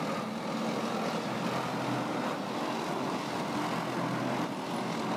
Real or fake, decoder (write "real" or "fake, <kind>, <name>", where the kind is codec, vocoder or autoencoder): real